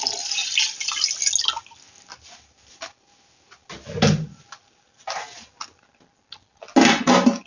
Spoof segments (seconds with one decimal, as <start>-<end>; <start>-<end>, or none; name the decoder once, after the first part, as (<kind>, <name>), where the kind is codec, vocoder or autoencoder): none